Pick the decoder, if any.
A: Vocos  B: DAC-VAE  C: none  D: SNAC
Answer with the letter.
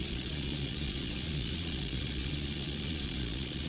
A